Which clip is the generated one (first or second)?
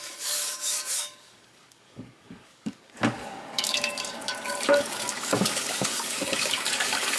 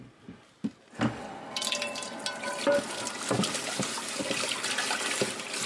first